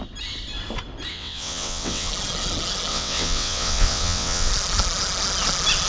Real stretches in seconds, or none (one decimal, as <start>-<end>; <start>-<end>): 0.0-1.1; 2.1-2.9; 4.5-5.9

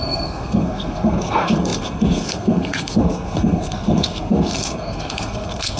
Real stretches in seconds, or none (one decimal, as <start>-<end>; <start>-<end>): none

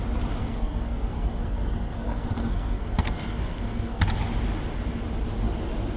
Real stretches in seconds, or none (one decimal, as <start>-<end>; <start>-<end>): 0.0-0.4; 4.0-6.0